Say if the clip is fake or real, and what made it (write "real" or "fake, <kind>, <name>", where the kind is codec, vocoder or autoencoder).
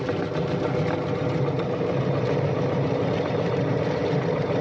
real